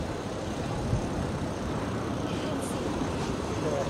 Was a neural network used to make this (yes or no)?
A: yes